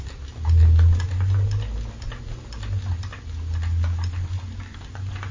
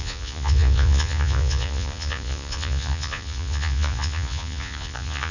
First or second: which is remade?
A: second